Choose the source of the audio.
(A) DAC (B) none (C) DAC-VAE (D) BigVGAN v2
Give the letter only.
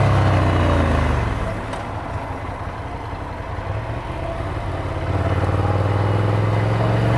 B